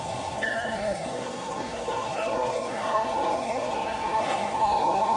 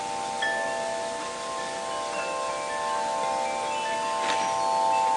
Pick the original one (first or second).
second